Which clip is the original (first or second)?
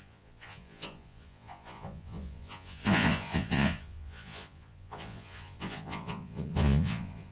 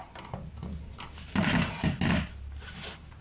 second